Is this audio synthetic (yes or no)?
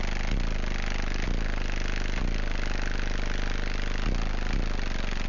no